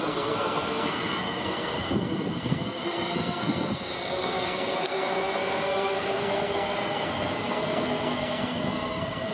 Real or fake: fake